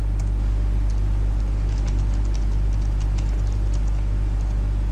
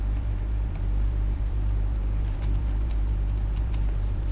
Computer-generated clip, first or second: second